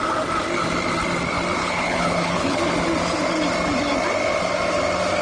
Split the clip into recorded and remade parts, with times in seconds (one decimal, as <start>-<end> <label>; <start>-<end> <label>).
0.0-1.6 recorded; 1.6-2.6 remade; 2.6-5.2 recorded